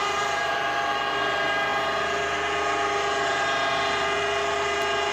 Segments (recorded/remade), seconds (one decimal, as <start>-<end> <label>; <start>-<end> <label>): 0.0-5.1 recorded